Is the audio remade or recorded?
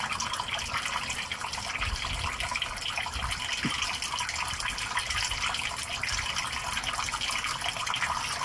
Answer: recorded